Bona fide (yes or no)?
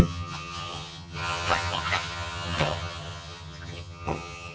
no